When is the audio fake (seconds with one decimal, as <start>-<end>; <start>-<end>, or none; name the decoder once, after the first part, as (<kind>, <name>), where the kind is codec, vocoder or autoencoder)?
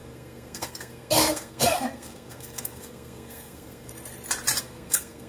0.0-3.9 (codec, SNAC); 4.6-5.3